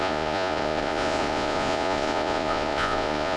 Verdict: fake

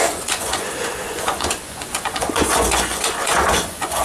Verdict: fake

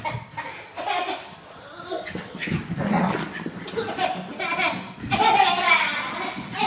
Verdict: real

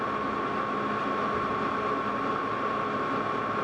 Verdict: real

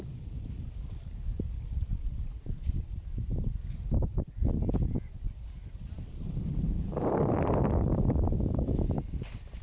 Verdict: real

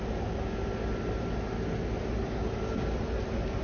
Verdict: real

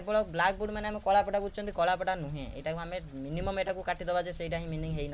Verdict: real